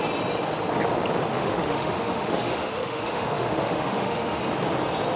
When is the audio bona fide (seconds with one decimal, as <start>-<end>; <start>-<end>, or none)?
0.0-1.3; 4.4-5.2